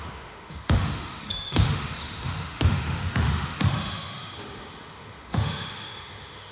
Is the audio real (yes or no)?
no